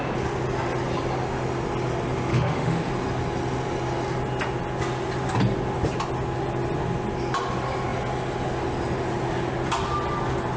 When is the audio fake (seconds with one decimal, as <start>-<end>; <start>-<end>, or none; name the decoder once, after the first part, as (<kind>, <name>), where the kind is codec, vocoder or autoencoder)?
2.3-2.9 (autoencoder, DAC-VAE)